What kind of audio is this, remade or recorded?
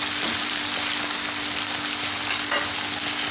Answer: recorded